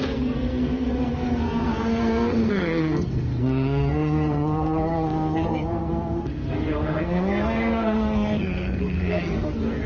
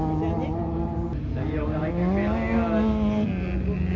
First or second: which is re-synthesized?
first